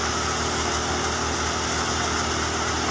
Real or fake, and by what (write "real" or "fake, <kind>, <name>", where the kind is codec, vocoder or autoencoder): real